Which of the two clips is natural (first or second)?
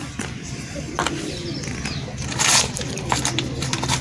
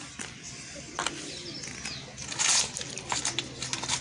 second